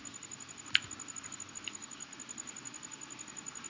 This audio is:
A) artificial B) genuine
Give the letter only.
B